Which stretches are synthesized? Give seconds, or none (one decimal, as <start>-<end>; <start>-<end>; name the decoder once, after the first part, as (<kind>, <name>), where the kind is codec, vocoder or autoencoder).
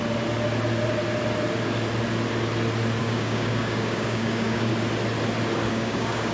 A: 3.0-4.7 (codec, DAC); 5.7-6.3